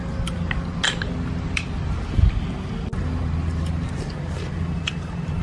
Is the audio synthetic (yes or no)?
no